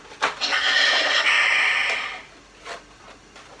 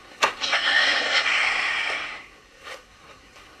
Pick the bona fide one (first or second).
first